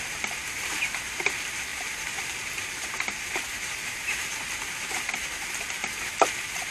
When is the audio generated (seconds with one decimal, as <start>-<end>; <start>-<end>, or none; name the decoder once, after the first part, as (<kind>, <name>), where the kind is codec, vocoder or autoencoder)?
0.0-6.7 (vocoder, BigVGAN v2)